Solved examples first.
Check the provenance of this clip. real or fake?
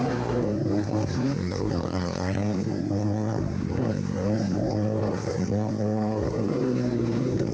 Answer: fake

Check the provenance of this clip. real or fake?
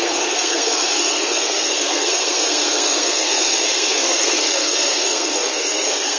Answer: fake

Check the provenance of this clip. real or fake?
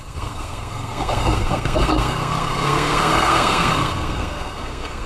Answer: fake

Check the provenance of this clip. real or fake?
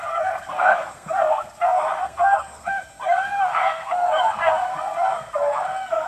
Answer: fake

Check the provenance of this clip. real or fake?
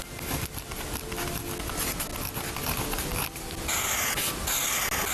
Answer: real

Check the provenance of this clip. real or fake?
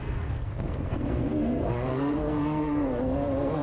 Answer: fake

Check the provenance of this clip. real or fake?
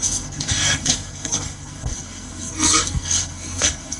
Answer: fake